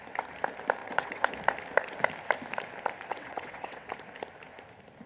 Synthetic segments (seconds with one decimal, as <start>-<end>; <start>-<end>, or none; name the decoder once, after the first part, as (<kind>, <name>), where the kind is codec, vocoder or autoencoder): 0.8-1.3 (vocoder, WaveNeXt); 3.1-3.9